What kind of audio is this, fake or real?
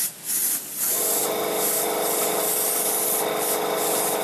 real